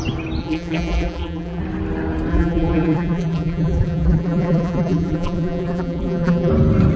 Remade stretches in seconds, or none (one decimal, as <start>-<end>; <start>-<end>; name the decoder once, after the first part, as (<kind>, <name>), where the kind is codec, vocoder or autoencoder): 0.4-1.6 (vocoder, BigVGAN v2); 2.3-6.5